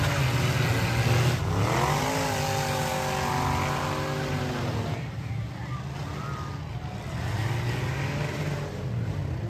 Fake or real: real